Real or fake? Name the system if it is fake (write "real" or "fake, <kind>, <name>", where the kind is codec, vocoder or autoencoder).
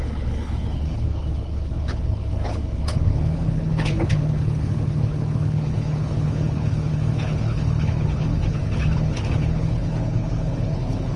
fake, codec, HILCodec